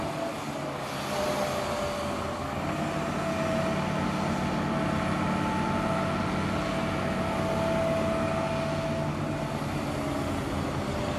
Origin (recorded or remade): recorded